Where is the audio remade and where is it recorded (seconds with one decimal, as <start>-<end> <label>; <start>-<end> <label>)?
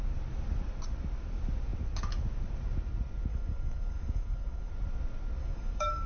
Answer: 0.0-3.3 recorded; 3.3-4.7 remade; 4.7-5.4 recorded; 5.4-6.1 remade